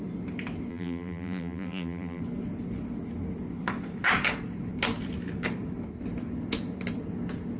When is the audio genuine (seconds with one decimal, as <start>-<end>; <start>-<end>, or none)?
0.0-0.7; 2.2-7.6